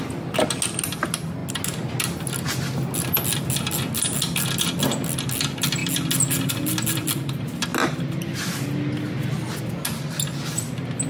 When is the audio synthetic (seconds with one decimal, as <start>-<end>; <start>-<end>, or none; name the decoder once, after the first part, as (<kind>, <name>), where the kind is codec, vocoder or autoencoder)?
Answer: none